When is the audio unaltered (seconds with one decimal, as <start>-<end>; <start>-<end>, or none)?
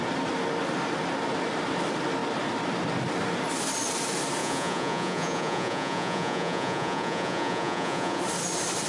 0.0-4.4; 8.2-8.9